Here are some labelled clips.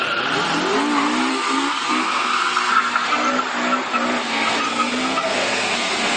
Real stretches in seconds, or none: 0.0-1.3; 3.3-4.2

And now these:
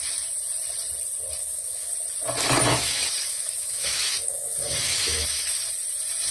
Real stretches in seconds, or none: 0.0-1.4; 1.9-2.7; 5.7-6.3

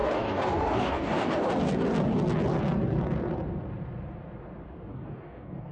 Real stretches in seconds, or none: 1.5-4.9

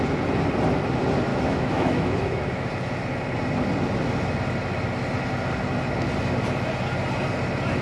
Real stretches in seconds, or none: 0.0-1.3; 2.7-7.8

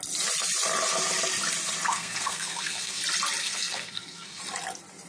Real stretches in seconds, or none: 0.0-1.9; 3.0-3.4; 4.4-5.1

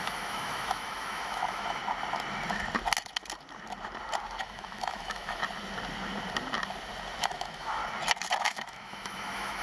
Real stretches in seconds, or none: 1.8-4.4; 5.4-7.2; 7.8-8.4

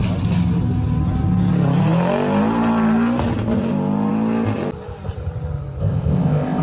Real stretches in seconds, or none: 0.0-5.8

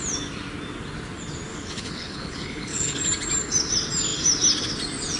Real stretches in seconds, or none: 0.0-1.5; 3.0-5.2